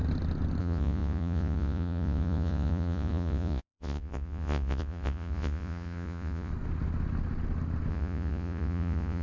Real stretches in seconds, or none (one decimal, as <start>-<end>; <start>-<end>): 0.0-0.6; 6.5-7.9